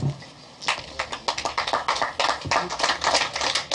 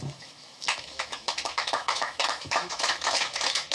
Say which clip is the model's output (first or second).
second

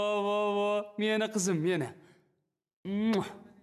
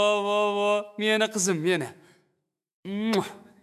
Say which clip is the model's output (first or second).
second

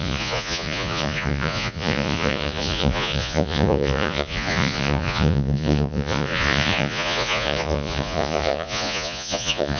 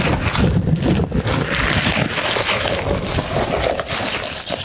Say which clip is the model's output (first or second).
first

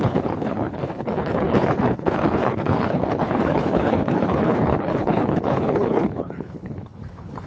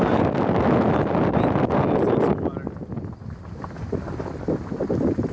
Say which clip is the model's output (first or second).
first